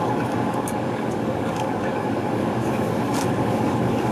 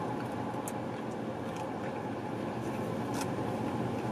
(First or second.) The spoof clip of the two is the first